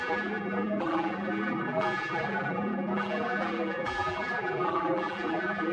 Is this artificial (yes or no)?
yes